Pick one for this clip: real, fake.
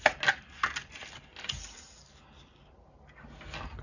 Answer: real